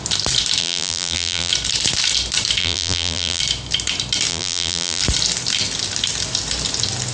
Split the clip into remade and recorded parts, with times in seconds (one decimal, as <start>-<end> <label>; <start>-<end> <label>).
0.0-0.6 recorded; 0.6-1.5 remade; 1.5-2.6 recorded; 2.6-3.4 remade; 3.4-4.3 recorded; 4.3-5.0 remade; 5.0-7.1 recorded